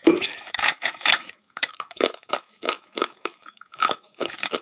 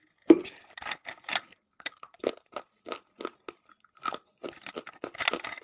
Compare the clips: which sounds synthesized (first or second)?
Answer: first